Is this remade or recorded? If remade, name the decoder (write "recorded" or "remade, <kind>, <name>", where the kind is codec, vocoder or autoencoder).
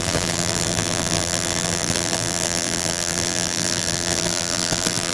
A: remade, vocoder, BigVGAN v2